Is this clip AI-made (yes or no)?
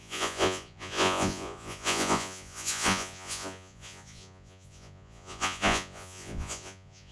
yes